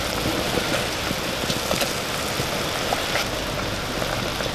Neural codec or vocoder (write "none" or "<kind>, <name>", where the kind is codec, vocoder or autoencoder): none